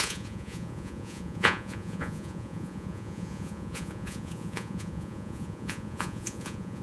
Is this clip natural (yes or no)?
no